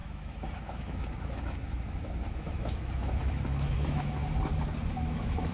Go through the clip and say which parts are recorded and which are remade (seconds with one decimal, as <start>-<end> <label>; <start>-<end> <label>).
0.0-4.2 remade; 4.2-4.9 recorded; 4.9-5.5 remade